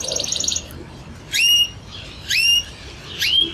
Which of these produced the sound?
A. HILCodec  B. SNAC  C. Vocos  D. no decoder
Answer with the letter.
D